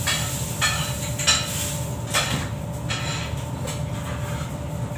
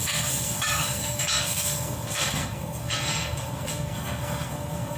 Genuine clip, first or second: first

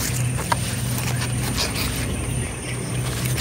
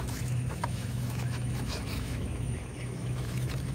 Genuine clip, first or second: first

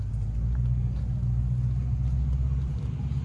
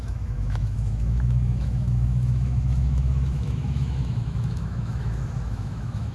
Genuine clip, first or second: first